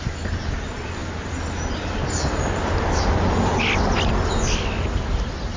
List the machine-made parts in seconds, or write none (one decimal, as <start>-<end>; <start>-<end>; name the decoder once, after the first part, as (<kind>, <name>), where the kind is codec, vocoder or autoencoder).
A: none